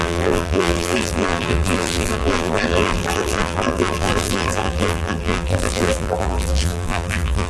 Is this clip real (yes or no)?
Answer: no